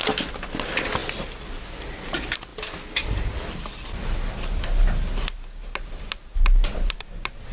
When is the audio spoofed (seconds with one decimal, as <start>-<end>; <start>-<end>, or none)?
none